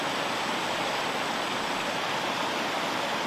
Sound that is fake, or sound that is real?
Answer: real